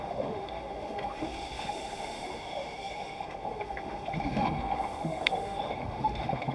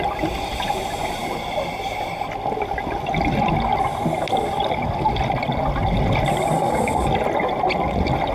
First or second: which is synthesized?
first